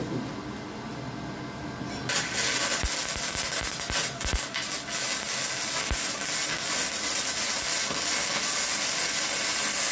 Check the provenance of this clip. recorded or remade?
recorded